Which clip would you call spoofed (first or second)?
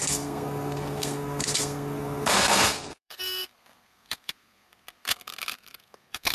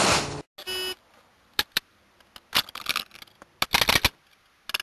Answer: first